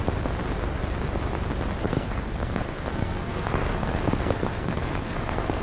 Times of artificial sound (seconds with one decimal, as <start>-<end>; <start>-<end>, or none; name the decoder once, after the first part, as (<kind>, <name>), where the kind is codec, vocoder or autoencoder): 1.8-5.6 (codec, SNAC)